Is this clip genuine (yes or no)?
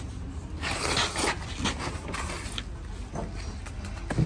yes